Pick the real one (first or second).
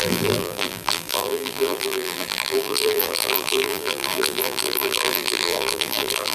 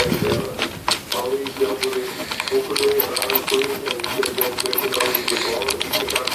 second